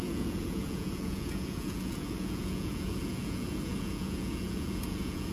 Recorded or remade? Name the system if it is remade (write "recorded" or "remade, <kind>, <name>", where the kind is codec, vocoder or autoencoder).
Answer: remade, vocoder, Vocos